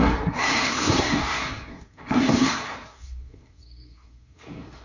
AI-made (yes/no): yes